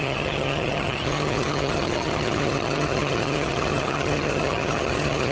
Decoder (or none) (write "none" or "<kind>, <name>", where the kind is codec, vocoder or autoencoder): vocoder, HiFi-GAN